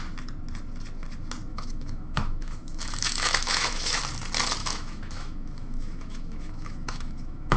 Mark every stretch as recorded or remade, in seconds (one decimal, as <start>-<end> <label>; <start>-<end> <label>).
0.0-1.5 recorded; 1.5-4.0 remade; 4.0-4.6 recorded; 4.6-7.6 remade